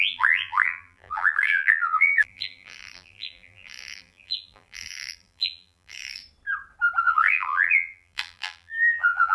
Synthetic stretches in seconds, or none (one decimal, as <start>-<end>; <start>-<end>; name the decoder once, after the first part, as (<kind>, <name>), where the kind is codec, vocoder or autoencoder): 0.0-6.2 (vocoder, BigVGAN v2); 7.0-9.3